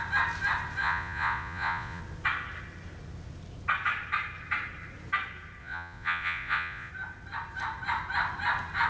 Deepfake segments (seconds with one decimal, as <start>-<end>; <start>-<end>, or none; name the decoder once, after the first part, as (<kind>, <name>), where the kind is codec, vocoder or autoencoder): 0.8-2.0 (vocoder, Vocos); 5.6-6.9